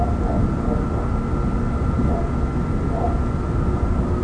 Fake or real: real